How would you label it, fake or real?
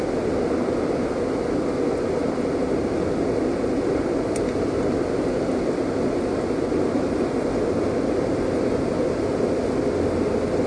real